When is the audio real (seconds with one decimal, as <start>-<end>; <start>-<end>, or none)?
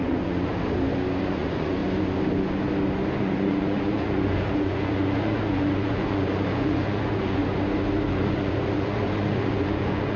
0.5-1.2; 1.8-3.2; 7.4-8.1